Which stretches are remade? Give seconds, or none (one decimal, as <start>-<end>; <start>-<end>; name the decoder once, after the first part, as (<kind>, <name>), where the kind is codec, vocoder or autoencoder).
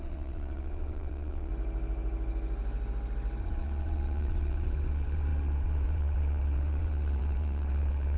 0.0-1.5 (vocoder, WaveNeXt); 3.4-8.2